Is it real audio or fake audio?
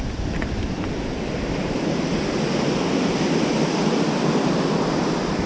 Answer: real